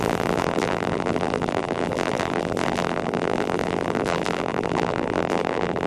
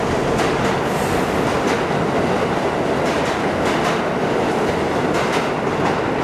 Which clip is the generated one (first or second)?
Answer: first